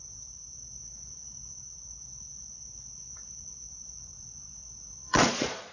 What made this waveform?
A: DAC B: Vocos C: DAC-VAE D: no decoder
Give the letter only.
B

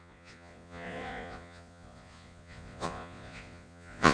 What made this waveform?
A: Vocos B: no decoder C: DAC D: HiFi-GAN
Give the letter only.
A